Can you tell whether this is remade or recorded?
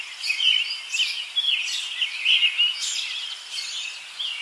recorded